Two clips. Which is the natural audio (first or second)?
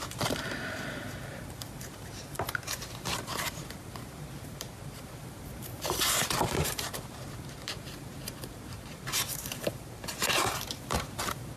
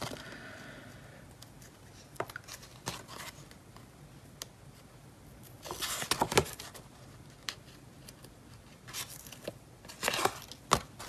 second